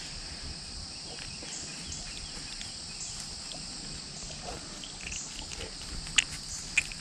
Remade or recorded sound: recorded